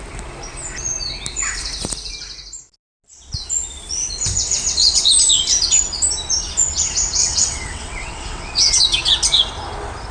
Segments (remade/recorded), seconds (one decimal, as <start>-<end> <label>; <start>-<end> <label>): 0.0-7.2 recorded; 7.2-8.8 remade; 8.8-10.1 recorded